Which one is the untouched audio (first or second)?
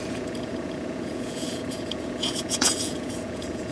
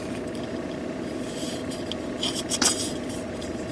second